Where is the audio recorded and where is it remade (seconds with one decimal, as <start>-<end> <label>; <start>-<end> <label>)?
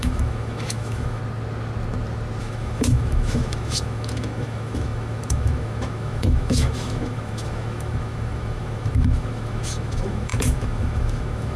0.0-1.2 remade; 1.2-2.4 recorded; 2.4-11.6 remade